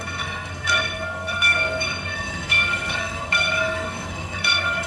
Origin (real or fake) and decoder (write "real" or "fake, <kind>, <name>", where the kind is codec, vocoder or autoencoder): fake, codec, SNAC